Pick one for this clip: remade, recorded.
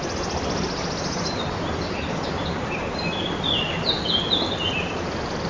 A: recorded